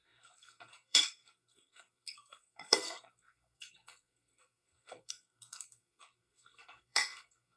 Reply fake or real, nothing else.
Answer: fake